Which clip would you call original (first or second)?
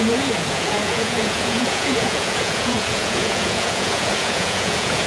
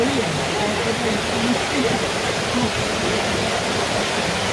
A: second